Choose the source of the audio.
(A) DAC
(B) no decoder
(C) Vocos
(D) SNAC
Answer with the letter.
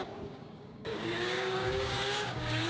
A